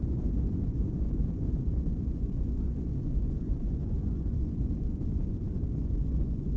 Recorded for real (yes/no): no